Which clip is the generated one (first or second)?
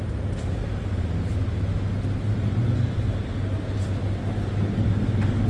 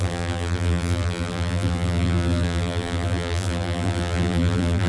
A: second